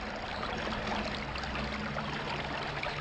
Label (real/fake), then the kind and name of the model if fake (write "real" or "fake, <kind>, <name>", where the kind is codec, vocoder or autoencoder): real